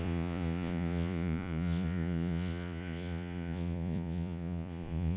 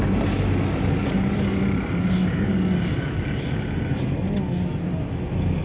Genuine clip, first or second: second